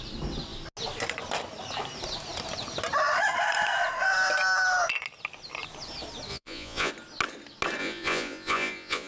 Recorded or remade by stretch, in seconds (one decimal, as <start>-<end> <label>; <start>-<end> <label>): 0.0-6.3 recorded; 6.3-6.9 remade; 6.9-7.8 recorded; 7.8-9.1 remade